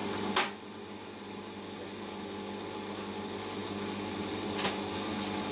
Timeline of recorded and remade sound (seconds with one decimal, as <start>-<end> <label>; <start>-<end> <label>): 0.0-5.5 recorded